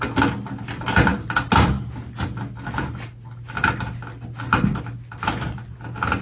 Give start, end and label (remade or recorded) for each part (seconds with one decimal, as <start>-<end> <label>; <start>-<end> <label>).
0.0-6.2 recorded